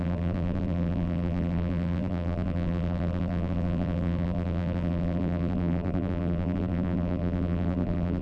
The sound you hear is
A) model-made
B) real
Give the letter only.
A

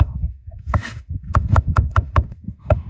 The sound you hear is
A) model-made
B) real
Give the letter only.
A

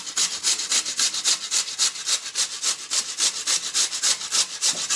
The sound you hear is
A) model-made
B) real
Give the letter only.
B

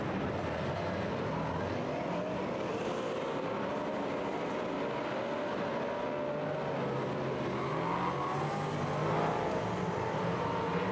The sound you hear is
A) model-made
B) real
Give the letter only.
B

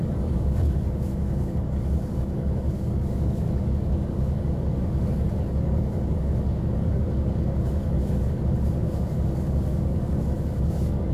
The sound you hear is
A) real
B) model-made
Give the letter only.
B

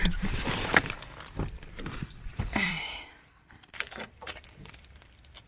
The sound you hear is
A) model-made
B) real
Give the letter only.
A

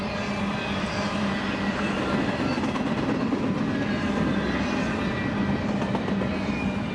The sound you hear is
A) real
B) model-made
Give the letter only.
A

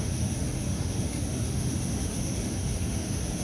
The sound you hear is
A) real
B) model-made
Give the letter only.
B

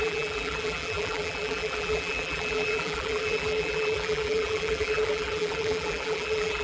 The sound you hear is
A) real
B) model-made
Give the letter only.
B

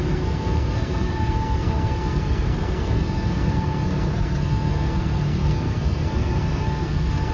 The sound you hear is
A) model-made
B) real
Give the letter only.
A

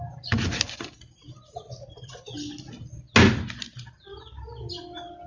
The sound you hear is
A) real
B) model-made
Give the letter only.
A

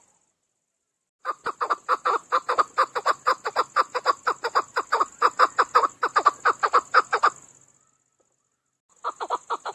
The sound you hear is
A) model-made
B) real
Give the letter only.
B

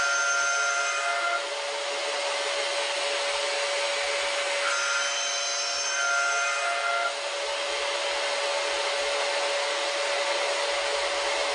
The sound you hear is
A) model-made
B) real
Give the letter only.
B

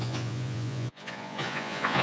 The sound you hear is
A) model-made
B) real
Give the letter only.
A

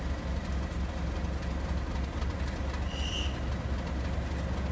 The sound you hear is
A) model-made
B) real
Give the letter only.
B